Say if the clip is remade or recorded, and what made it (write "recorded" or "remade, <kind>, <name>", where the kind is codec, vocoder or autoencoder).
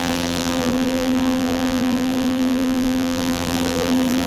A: remade, vocoder, BigVGAN v2